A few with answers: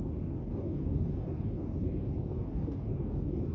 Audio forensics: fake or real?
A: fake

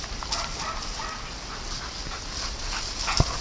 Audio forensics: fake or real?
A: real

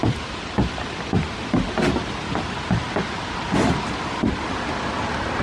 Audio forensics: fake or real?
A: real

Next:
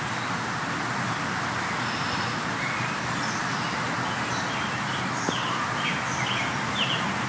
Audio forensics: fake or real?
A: real